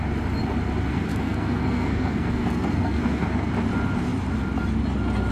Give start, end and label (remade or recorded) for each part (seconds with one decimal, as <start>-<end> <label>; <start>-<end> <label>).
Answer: 0.0-0.9 recorded; 0.9-3.5 remade; 3.5-5.3 recorded